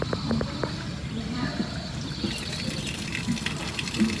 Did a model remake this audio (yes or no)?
yes